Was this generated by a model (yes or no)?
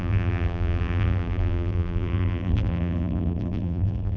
yes